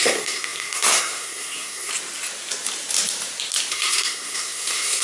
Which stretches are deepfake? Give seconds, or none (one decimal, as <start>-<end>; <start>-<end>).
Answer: 0.0-1.9; 3.7-5.0